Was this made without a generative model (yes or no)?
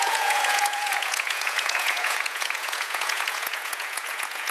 no